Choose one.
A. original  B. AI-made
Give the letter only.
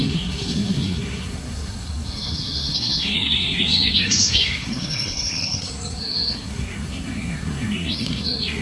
B